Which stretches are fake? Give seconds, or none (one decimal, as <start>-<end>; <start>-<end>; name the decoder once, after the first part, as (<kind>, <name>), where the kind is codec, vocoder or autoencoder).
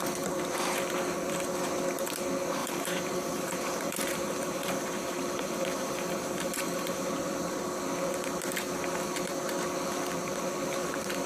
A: 2.6-7.1 (vocoder, BigVGAN v2)